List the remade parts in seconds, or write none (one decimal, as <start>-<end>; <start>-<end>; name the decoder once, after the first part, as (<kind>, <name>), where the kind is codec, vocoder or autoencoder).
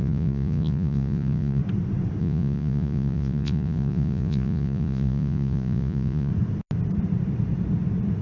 0.0-1.6 (vocoder, Vocos); 2.2-6.3